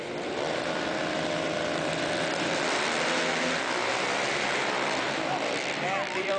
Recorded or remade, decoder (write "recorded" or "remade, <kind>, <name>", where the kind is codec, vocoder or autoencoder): recorded